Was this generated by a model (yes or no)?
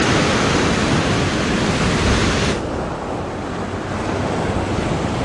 no